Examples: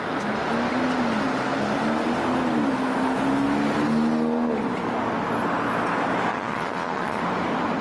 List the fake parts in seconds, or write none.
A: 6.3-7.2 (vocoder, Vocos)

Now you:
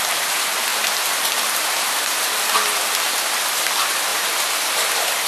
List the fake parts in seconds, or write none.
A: 0.7-2.2 (vocoder, BigVGAN v2); 4.1-5.3

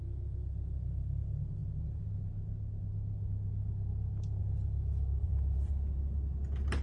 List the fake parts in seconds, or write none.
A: 5.2-5.9 (vocoder, BigVGAN v2)

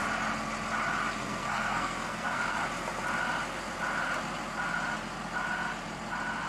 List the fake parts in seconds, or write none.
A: 1.2-2.6 (codec, SNAC)

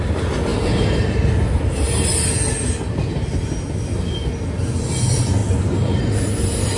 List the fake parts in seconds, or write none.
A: none

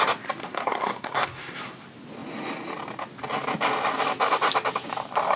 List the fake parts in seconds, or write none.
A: 0.4-1.7 (codec, SNAC)